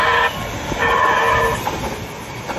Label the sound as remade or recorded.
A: recorded